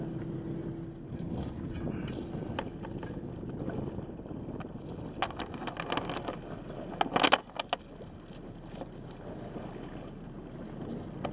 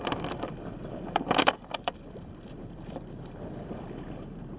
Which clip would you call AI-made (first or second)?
second